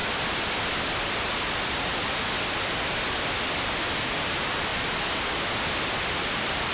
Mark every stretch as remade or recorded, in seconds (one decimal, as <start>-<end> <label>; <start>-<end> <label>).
0.0-4.0 recorded; 4.0-4.7 remade; 4.7-6.3 recorded; 6.3-6.7 remade